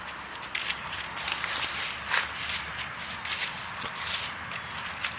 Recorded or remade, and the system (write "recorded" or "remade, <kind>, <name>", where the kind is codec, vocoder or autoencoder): recorded